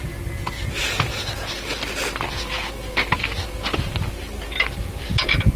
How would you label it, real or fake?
real